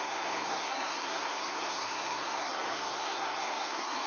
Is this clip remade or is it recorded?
remade